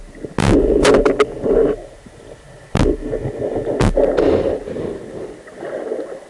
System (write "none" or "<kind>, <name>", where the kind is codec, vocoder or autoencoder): none